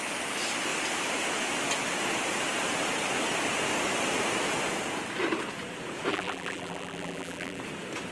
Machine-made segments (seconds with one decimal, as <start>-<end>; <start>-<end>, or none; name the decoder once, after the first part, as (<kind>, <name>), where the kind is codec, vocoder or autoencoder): 6.1-7.6 (vocoder, BigVGAN v2)